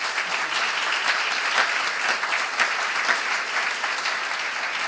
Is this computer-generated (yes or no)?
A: no